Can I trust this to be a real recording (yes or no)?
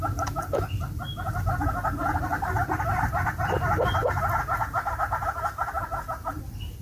yes